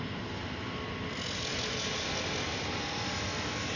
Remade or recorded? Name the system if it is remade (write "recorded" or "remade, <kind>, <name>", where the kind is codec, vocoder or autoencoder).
recorded